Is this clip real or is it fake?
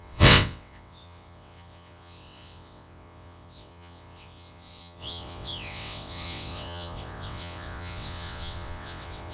fake